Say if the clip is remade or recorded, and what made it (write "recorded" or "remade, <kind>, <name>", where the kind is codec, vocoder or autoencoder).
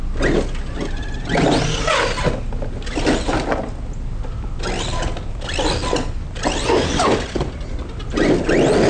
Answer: recorded